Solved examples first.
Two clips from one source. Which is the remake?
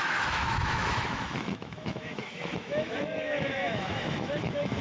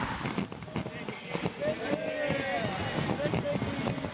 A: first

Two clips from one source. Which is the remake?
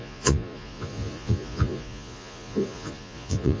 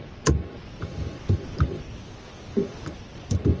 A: first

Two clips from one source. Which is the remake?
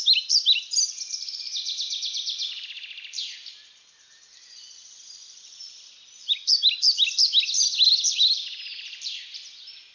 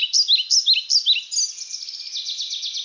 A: first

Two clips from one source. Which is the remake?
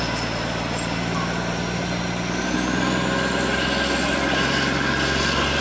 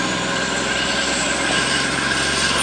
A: second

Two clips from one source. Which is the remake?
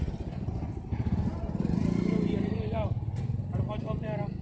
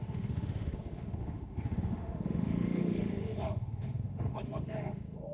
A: second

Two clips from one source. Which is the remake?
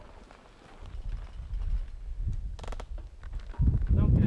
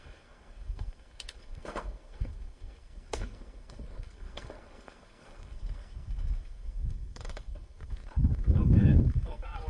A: second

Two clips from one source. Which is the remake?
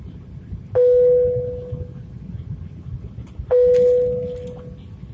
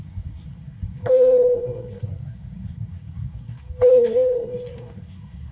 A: second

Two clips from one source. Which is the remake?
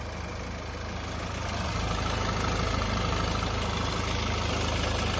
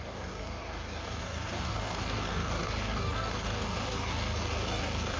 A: second